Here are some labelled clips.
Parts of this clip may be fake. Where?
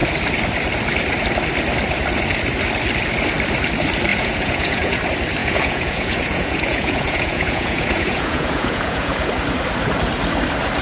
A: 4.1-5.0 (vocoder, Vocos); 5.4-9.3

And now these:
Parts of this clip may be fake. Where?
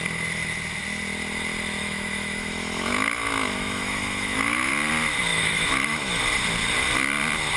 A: 1.8-4.7 (autoencoder, DAC-VAE); 5.3-6.2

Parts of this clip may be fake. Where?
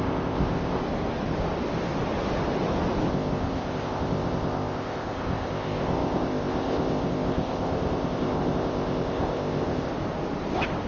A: 0.0-0.8 (codec, ZipCodec); 3.1-9.9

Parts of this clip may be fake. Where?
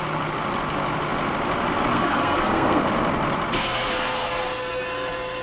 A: 1.9-2.8 (codec, SNAC); 3.5-4.4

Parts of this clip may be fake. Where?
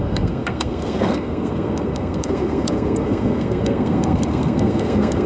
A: 0.0-5.3 (codec, SNAC)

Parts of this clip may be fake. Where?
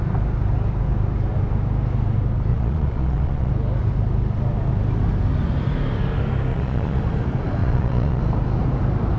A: 2.5-3.5 (vocoder, Vocos); 6.5-7.0; 7.6-8.2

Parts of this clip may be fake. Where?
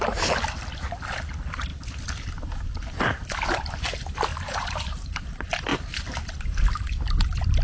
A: 4.3-5.2 (vocoder, BigVGAN v2)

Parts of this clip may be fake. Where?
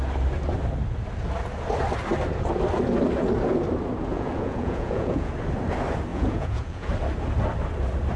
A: 4.1-5.3 (vocoder, Vocos); 6.1-6.9